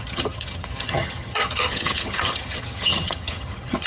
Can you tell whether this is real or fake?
fake